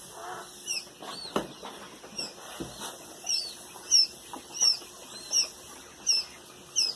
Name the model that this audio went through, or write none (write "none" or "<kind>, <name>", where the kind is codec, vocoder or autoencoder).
none